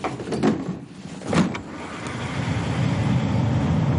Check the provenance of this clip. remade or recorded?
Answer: recorded